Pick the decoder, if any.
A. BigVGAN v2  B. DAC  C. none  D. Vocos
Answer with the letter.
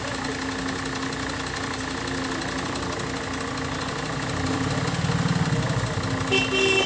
C